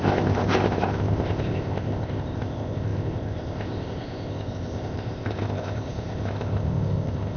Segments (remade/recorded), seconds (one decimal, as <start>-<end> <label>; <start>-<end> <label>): 0.0-7.4 remade